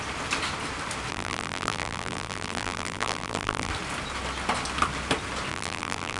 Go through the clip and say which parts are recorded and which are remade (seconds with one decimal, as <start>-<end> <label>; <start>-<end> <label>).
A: 0.0-1.1 recorded; 1.1-3.7 remade; 3.7-5.5 recorded; 5.5-6.2 remade